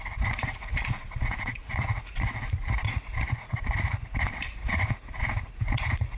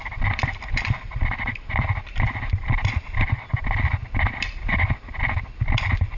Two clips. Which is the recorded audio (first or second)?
second